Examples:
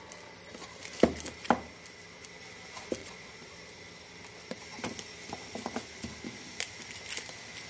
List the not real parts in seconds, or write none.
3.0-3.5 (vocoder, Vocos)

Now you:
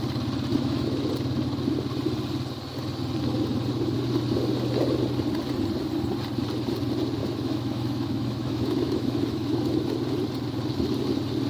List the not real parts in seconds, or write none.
0.5-1.1 (autoencoder, DAC-VAE); 7.2-9.9